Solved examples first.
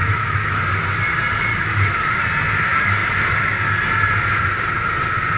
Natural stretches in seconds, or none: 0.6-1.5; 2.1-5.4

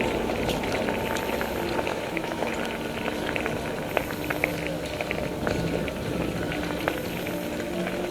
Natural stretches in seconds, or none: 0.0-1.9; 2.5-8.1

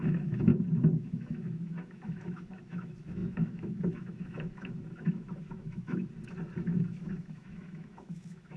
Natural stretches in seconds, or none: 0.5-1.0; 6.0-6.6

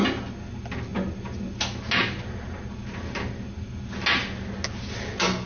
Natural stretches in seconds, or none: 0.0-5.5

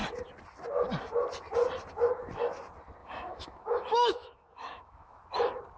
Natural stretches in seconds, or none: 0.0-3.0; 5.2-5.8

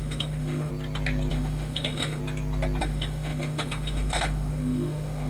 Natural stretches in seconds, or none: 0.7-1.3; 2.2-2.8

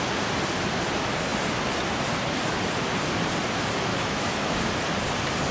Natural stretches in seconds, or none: 0.0-3.9; 4.7-5.5

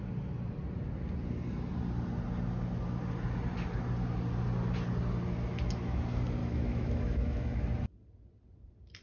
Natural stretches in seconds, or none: 0.0-6.4; 7.6-9.0